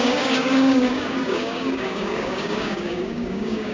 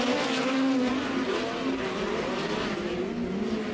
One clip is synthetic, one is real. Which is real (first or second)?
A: second